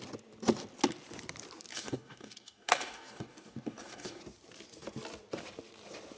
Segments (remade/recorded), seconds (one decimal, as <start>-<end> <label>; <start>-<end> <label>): 0.0-1.7 recorded; 1.7-4.2 remade; 4.2-6.2 recorded